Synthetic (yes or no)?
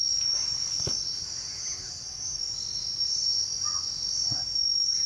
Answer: no